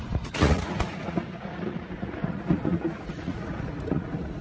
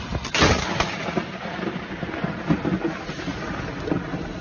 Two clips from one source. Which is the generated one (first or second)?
first